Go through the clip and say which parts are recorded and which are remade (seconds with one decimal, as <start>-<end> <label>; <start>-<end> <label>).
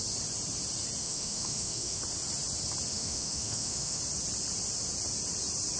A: 0.0-1.0 recorded; 1.0-2.0 remade; 2.0-2.9 recorded; 2.9-4.0 remade; 4.0-5.8 recorded